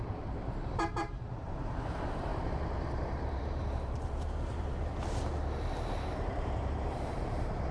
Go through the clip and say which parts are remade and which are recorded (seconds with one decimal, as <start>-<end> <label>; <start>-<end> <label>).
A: 0.0-4.7 remade; 4.7-6.1 recorded; 6.1-7.7 remade